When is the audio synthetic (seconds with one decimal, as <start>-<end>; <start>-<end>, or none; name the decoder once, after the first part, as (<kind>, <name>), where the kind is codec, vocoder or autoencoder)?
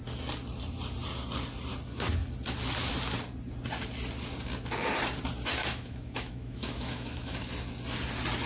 5.6-7.5 (autoencoder, DAC-VAE)